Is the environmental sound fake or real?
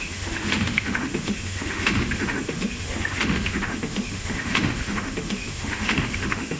fake